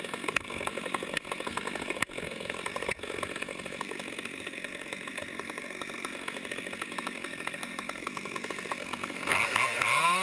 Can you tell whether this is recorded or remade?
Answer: remade